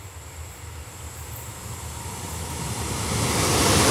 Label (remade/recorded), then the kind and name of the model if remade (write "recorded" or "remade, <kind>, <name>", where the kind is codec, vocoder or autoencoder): recorded